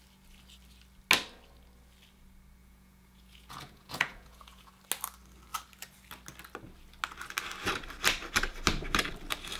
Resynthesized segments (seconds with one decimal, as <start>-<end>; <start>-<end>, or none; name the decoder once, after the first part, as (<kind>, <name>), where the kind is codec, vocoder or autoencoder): 2.6-4.7 (vocoder, Vocos)